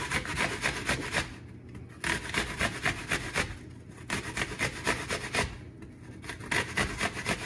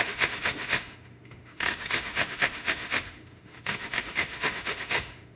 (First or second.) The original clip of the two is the first